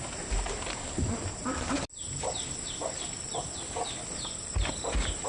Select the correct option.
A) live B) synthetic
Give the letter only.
A